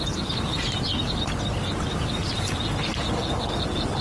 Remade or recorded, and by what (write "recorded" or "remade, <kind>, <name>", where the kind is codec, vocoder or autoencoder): recorded